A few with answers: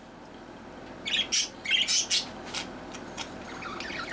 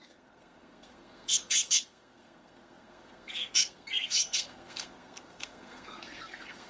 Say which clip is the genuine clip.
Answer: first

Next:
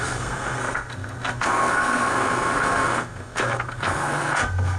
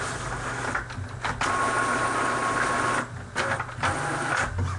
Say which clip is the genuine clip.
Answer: second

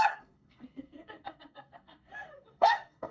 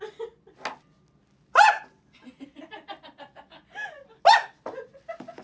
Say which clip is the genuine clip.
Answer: second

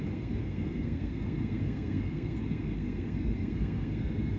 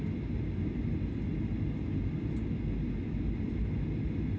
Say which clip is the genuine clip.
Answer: second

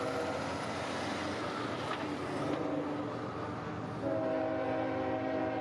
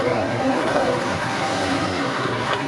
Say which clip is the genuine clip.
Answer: first